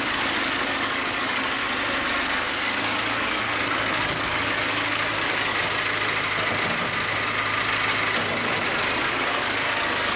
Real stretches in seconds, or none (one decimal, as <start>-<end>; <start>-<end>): 1.6-2.5; 5.5-9.1